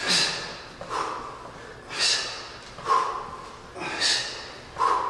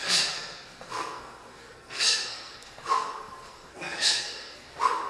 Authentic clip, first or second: first